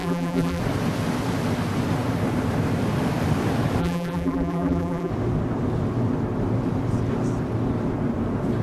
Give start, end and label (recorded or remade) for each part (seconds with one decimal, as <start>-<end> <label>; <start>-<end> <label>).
0.0-0.6 remade; 0.6-3.8 recorded; 3.8-5.1 remade; 5.1-8.6 recorded